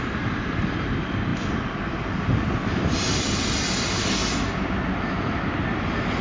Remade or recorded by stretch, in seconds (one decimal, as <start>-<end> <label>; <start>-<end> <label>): 0.0-6.2 recorded